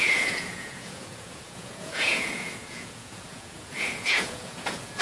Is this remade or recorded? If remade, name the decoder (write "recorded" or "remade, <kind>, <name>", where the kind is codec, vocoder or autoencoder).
remade, vocoder, Vocos